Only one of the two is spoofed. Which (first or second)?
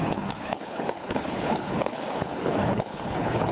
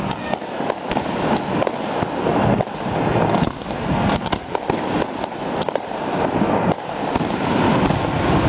first